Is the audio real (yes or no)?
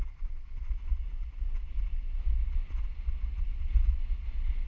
yes